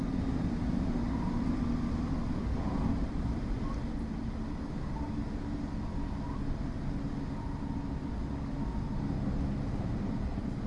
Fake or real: real